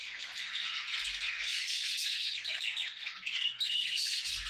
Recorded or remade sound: remade